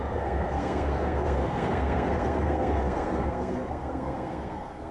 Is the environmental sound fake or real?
fake